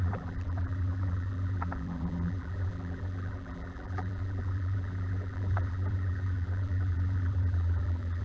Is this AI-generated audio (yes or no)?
yes